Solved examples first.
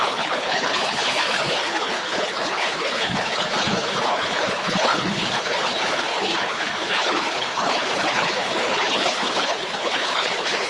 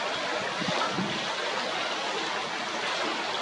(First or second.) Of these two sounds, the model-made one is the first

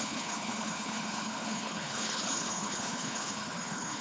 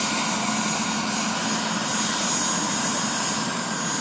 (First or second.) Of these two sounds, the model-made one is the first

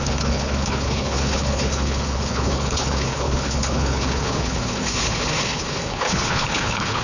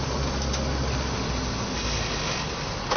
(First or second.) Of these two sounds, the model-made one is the first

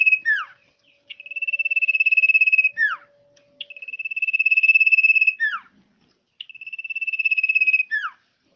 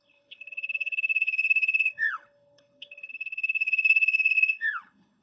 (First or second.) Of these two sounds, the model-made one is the second